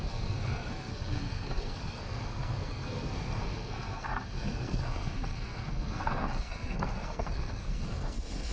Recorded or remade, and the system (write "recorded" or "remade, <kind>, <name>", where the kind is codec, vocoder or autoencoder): remade, codec, SNAC